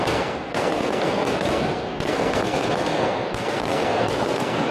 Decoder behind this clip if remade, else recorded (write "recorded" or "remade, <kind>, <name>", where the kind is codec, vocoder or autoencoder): remade, codec, SNAC